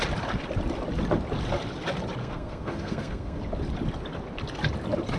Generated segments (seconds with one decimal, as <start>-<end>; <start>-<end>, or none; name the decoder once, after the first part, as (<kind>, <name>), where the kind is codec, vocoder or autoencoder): 2.2-3.4 (codec, SNAC)